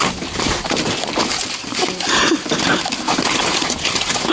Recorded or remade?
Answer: remade